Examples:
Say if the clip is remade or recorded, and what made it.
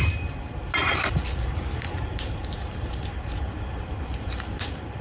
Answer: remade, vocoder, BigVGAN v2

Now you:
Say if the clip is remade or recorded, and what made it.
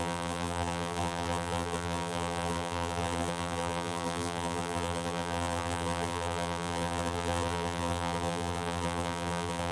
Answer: remade, vocoder, BigVGAN v2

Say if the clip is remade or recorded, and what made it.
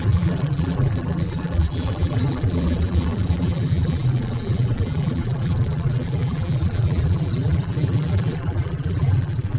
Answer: remade, vocoder, BigVGAN v2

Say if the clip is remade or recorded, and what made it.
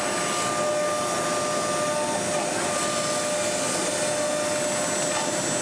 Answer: recorded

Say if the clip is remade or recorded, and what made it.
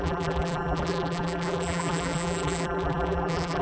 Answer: remade, vocoder, BigVGAN v2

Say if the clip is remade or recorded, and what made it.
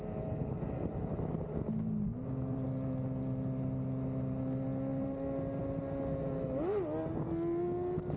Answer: recorded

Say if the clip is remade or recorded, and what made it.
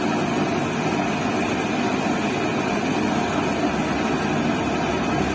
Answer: recorded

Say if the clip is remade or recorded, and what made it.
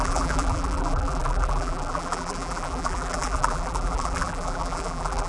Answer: remade, vocoder, BigVGAN v2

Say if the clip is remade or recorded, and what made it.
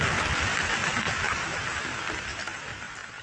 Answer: remade, vocoder, BigVGAN v2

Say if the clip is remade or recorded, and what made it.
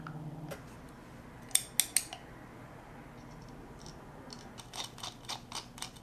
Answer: recorded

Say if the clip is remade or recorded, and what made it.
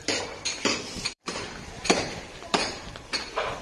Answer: remade, vocoder, BigVGAN v2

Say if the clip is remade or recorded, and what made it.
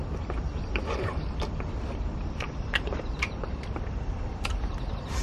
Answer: remade, vocoder, BigVGAN v2